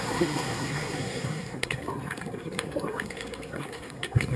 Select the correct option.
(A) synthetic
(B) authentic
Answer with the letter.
A